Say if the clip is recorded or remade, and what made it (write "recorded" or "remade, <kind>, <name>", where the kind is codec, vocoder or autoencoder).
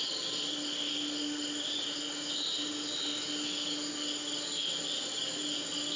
recorded